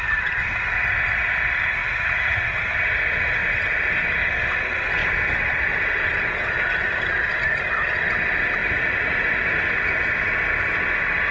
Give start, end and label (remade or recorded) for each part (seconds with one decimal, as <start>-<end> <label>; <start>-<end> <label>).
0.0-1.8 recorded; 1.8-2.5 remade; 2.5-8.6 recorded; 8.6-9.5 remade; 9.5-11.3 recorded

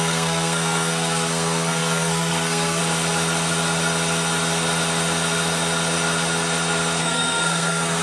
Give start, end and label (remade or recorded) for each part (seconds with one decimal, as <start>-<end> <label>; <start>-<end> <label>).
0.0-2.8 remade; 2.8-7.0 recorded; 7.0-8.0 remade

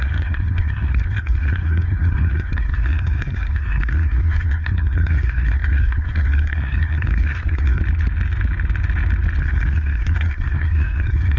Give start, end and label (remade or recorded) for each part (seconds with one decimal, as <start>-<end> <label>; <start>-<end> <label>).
0.0-7.8 remade; 7.8-9.4 recorded; 9.4-11.4 remade